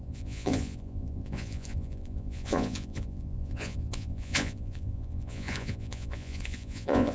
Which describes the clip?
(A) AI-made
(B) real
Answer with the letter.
A